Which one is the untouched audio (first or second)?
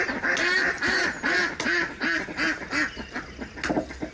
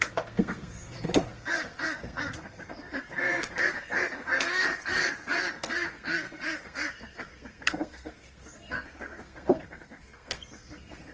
first